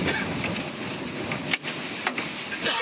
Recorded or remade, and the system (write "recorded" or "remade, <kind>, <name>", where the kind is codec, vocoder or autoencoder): recorded